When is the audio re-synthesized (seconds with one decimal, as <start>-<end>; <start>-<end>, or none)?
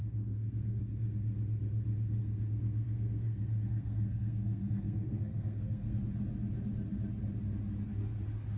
0.0-0.8; 2.2-6.0